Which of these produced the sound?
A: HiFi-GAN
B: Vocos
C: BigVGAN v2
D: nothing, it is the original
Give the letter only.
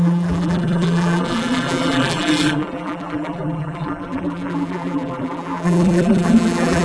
C